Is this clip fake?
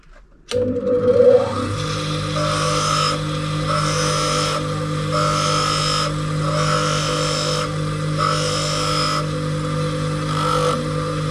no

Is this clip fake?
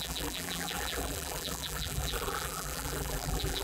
yes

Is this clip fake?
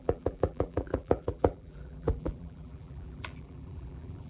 yes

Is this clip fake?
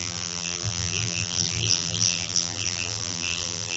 yes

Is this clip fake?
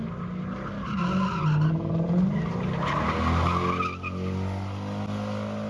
no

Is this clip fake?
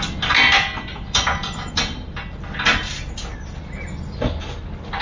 no